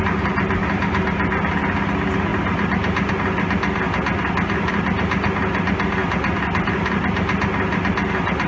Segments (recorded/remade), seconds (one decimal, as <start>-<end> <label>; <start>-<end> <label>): 0.0-8.5 recorded